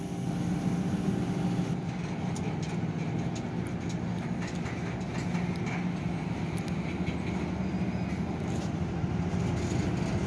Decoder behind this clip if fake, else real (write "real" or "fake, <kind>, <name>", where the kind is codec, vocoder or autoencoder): real